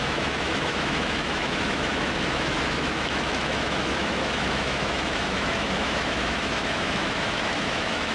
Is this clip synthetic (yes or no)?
yes